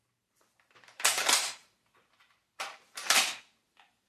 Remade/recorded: remade